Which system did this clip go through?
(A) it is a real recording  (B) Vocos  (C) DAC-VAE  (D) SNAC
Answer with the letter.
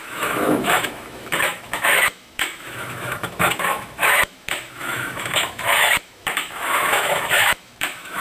C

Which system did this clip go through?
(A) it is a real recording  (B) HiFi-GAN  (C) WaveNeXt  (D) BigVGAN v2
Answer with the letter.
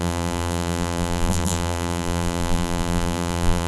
D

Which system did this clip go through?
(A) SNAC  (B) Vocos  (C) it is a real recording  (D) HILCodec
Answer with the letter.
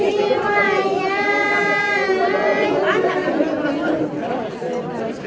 C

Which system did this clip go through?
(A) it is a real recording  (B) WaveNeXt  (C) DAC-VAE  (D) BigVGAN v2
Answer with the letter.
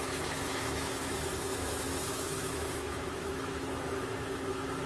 C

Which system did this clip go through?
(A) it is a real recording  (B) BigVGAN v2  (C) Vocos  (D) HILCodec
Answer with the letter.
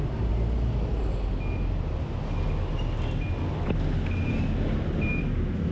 A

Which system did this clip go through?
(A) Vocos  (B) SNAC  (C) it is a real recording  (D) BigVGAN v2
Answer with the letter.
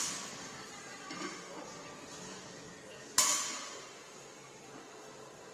C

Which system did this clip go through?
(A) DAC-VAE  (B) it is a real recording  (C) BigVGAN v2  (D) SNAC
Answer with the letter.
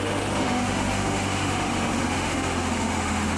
A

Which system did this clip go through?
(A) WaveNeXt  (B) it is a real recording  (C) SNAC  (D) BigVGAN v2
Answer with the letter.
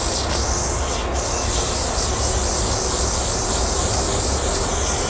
B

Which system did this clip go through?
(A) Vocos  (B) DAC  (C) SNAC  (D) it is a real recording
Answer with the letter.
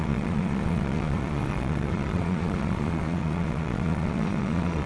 A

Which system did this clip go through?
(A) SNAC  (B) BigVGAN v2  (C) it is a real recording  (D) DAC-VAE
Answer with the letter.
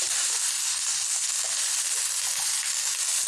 C